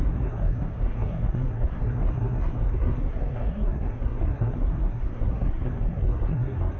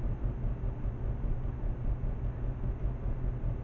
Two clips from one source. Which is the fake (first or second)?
first